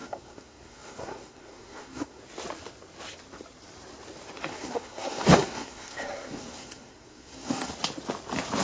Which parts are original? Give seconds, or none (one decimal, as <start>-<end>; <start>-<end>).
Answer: 2.2-4.5; 7.7-8.6